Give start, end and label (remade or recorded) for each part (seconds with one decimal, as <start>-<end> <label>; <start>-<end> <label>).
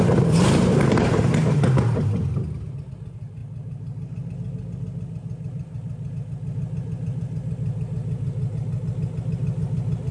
0.0-10.1 recorded